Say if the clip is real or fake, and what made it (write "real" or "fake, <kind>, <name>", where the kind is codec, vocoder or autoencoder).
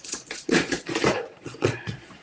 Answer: fake, vocoder, Vocos